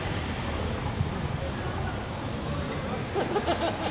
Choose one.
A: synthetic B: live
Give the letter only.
B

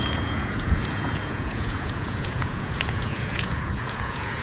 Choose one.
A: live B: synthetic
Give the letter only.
B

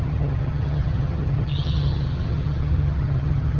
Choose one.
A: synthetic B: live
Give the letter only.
A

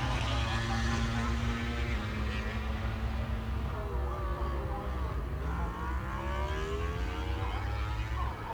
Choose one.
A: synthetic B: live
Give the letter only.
B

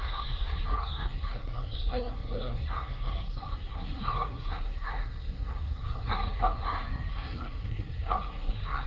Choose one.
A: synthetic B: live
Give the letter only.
A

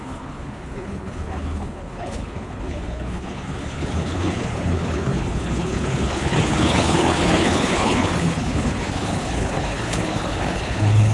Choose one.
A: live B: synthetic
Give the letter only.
B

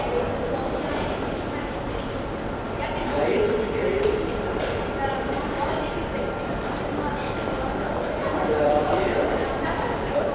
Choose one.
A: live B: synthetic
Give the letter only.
B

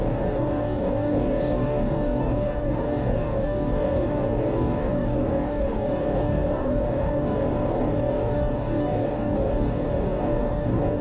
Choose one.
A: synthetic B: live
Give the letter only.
A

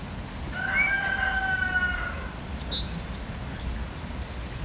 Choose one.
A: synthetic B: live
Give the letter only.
B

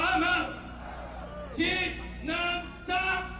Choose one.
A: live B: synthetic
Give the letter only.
A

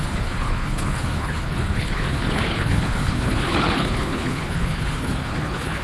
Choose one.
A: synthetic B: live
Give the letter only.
A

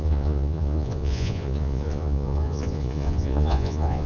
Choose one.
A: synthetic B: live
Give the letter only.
A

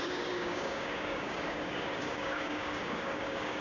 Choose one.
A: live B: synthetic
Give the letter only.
B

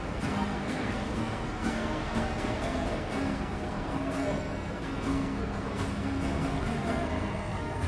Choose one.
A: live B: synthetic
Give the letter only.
B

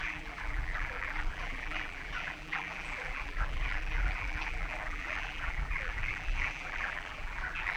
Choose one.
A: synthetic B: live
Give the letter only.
A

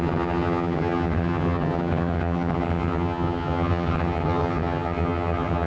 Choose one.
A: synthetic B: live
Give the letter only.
A